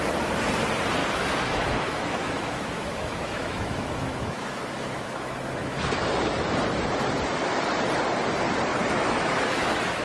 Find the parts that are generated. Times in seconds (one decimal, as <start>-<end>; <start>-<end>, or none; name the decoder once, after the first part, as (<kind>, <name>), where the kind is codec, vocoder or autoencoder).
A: 1.0-5.8 (autoencoder, DAC-VAE); 8.7-10.0

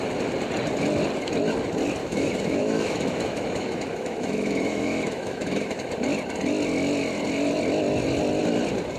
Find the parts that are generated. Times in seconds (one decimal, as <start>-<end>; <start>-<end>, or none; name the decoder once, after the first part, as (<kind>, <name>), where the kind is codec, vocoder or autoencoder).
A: 2.0-5.9 (autoencoder, DAC-VAE)

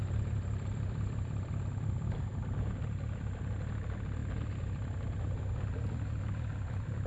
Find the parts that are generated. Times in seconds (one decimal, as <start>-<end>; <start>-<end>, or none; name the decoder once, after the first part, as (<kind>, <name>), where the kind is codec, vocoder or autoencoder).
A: none

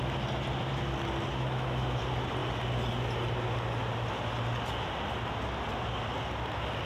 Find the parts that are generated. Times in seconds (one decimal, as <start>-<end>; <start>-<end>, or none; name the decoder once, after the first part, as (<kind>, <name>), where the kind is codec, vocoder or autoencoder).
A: 1.3-2.0 (autoencoder, DAC-VAE)

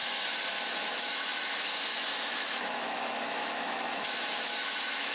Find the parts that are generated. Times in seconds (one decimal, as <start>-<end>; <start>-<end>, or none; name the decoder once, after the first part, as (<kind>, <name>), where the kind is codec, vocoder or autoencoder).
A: 0.0-1.4 (autoencoder, DAC-VAE); 1.9-5.1

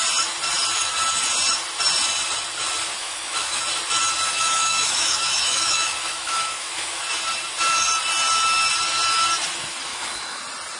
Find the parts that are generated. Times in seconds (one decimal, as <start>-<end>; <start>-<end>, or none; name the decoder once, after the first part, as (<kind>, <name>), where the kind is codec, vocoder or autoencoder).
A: 3.0-3.6 (autoencoder, DAC-VAE); 4.3-7.1; 9.9-10.4

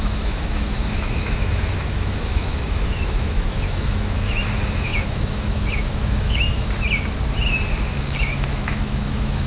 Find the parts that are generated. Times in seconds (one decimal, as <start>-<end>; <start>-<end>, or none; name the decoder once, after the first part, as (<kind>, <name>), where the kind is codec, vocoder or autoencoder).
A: 0.0-6.5 (autoencoder, DAC-VAE); 7.9-9.5

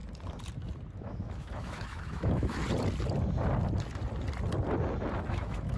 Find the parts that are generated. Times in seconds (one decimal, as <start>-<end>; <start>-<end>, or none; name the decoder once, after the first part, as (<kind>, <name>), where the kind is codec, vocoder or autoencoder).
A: 1.0-2.6 (autoencoder, DAC-VAE); 5.3-5.8